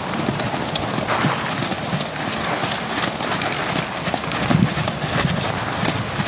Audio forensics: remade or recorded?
recorded